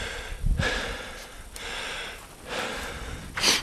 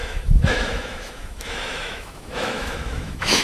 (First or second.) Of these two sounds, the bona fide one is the first